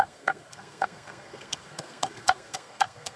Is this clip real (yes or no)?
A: no